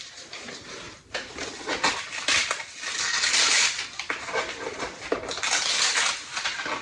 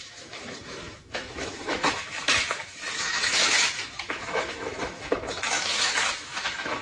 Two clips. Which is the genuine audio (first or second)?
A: first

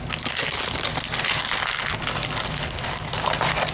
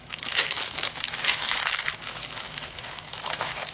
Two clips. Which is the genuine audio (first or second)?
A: first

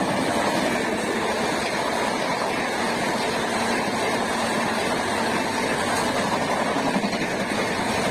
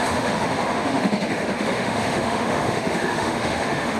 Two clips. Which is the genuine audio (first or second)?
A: first